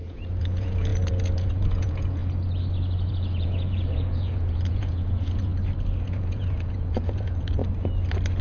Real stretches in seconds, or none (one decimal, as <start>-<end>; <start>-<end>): 2.2-3.1; 5.5-6.0; 7.6-8.4